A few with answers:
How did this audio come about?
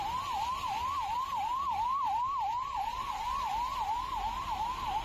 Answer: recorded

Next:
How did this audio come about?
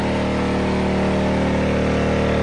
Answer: recorded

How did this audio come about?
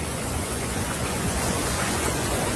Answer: remade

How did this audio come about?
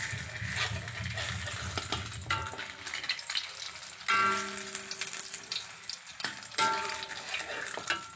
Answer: recorded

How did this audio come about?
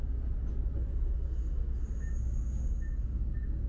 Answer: recorded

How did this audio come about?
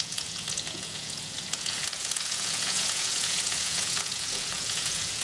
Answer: remade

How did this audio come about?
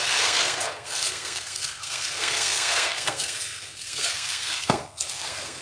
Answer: remade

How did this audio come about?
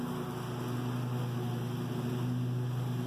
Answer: recorded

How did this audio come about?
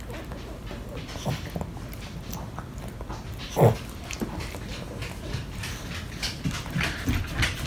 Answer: recorded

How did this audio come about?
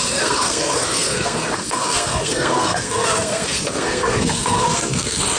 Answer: remade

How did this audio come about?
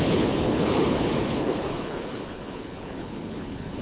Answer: remade